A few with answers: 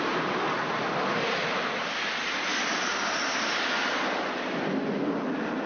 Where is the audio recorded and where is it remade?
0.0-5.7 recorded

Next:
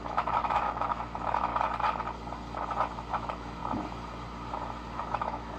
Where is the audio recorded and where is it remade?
0.0-1.5 remade; 1.5-3.1 recorded; 3.1-3.6 remade; 3.6-5.0 recorded; 5.0-5.6 remade